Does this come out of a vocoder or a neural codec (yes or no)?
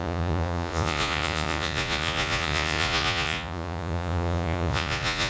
yes